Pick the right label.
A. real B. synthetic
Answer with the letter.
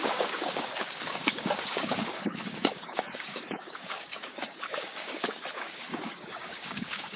B